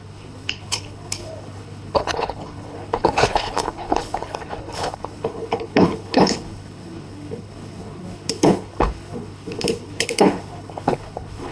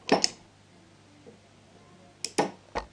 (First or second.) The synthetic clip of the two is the first